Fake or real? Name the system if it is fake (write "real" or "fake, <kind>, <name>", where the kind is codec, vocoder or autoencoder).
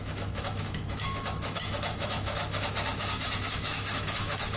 fake, autoencoder, DAC-VAE